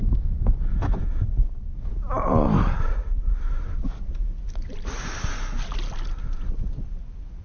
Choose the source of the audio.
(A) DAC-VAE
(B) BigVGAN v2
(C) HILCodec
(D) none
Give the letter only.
D